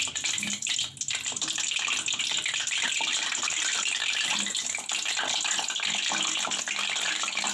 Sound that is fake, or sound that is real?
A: real